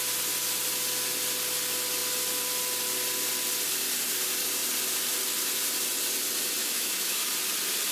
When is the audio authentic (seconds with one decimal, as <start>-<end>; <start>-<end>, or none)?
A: 0.0-6.6; 7.3-7.9